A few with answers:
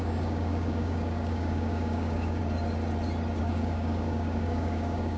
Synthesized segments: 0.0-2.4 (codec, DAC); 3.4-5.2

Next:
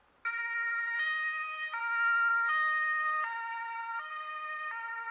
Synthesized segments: 2.3-4.1 (codec, DAC)

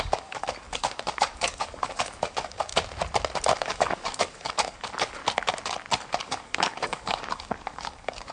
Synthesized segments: 0.0-2.7 (codec, DAC); 3.6-5.2; 6.2-8.3

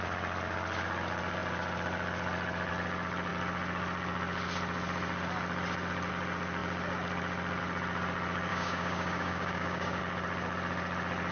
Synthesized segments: 8.5-10.0 (codec, DAC)

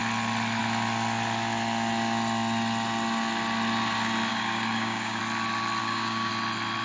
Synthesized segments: 4.3-5.2 (codec, DAC); 5.8-6.3

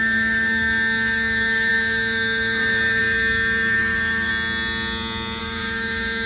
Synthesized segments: 0.0-4.3 (codec, DAC); 5.4-6.3

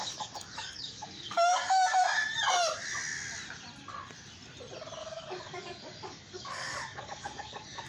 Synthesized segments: 0.0-2.0 (codec, DAC); 5.0-7.9

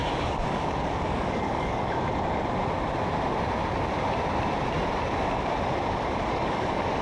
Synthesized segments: 0.0-2.0 (codec, DAC); 6.2-7.0